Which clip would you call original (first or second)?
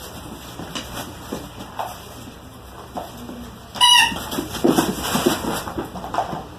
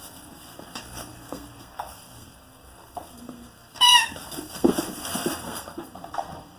first